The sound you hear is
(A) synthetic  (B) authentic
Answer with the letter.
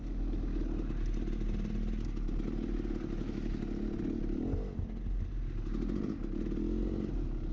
B